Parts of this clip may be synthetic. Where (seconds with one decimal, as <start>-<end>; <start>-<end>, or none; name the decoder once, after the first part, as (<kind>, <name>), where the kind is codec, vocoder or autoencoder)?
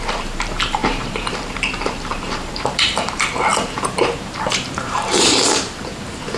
0.0-6.4 (vocoder, BigVGAN v2)